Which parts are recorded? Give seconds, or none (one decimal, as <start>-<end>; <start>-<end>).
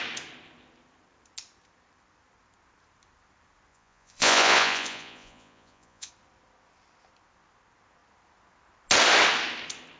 0.0-3.7; 6.1-10.0